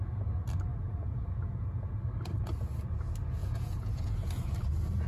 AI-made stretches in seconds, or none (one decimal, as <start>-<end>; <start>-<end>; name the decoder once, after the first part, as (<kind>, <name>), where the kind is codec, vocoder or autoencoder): 0.7-2.0 (vocoder, Vocos); 3.4-4.3